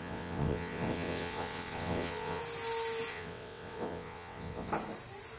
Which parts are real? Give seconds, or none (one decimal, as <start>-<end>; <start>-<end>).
2.4-3.1; 4.7-5.4